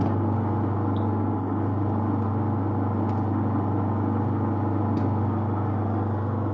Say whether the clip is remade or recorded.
recorded